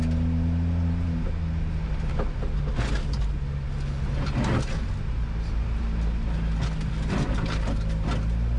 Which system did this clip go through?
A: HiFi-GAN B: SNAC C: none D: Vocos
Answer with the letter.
C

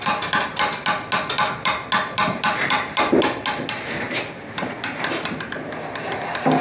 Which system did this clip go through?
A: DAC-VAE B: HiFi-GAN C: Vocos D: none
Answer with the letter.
D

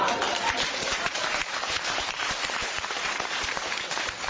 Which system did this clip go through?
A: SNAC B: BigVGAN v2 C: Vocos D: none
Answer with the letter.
B